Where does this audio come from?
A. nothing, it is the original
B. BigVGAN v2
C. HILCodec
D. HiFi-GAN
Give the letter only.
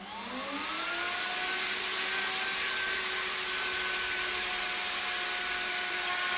A